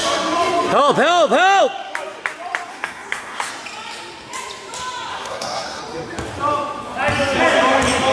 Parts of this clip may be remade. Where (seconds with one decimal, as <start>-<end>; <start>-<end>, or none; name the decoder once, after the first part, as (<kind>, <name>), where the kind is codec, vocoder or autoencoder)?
2.7-3.5 (codec, SNAC); 5.1-5.8